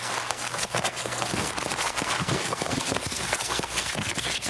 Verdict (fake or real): fake